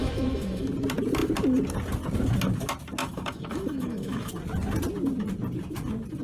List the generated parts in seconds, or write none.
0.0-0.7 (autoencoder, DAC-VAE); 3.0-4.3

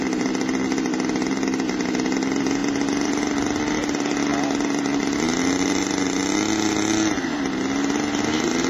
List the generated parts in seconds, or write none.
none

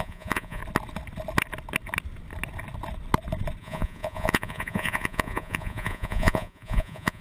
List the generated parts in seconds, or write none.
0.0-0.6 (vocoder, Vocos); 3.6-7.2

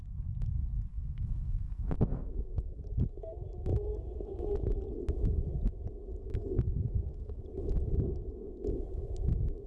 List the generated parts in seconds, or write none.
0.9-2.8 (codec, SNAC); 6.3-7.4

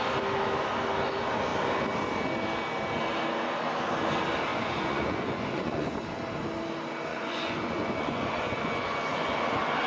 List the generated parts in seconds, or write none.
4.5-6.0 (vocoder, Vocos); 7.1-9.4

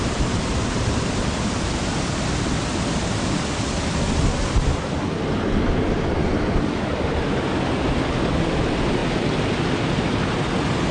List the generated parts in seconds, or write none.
none